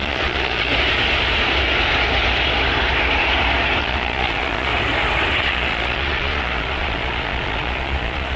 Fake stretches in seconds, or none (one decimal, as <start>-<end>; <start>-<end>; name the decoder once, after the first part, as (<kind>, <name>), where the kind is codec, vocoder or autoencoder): 0.0-0.7 (vocoder, Vocos); 3.8-4.7; 5.4-8.4